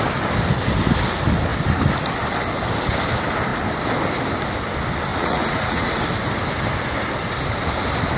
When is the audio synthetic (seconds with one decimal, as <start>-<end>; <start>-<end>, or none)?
5.1-5.9